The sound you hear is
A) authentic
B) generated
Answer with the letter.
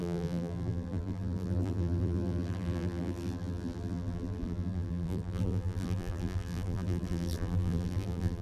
B